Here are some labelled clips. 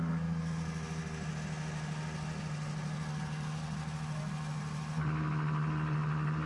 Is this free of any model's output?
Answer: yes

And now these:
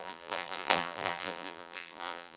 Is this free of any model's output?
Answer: no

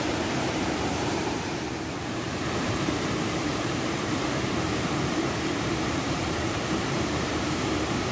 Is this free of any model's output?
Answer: no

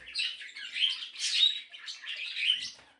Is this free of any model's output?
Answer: yes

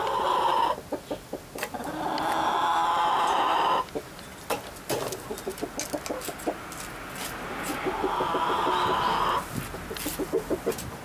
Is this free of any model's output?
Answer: yes